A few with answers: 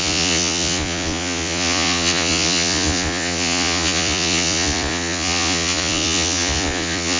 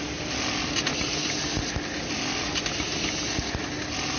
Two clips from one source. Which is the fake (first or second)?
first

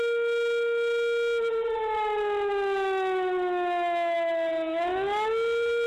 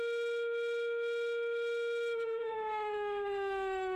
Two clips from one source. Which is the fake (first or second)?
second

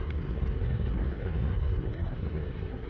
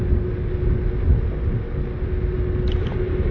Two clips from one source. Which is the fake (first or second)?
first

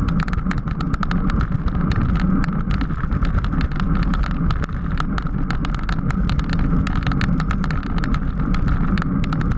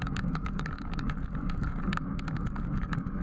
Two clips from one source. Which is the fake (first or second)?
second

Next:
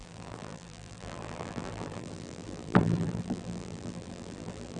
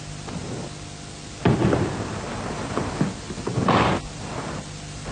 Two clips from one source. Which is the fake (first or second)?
first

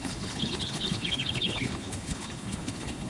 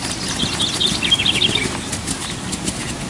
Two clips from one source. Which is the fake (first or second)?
first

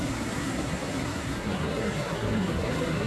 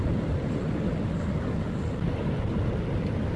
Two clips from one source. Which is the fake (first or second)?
first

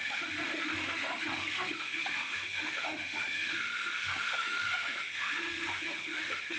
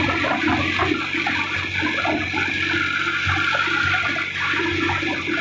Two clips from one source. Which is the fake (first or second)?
first